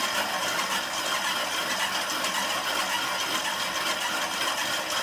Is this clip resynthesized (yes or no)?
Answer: no